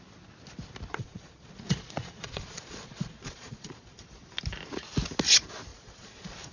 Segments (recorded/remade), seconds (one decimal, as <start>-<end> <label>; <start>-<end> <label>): 0.0-0.9 recorded; 0.9-4.0 remade; 4.0-5.7 recorded; 5.7-6.5 remade